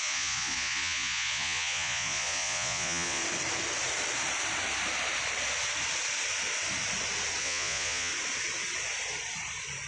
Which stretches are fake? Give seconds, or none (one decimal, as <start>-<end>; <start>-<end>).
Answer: 0.0-3.2; 7.4-8.1